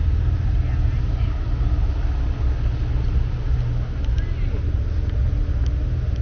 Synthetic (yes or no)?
no